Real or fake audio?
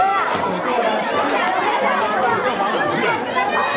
real